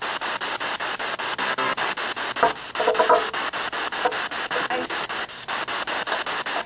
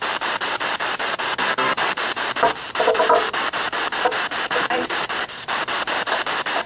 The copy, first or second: second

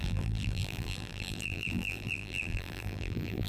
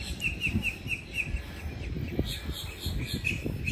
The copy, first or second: first